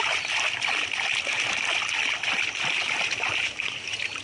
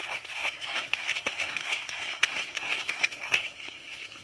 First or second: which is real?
first